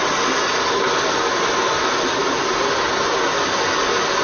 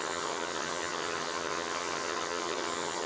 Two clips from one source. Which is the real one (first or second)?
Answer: first